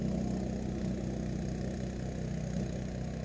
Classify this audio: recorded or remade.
recorded